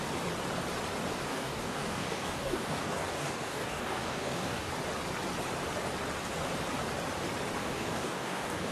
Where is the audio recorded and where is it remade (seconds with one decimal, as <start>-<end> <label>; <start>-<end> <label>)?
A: 0.0-1.3 recorded; 1.3-4.7 remade; 4.7-7.6 recorded; 7.6-8.7 remade